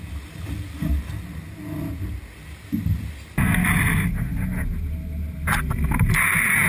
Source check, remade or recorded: recorded